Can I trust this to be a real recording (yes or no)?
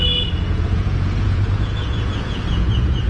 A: no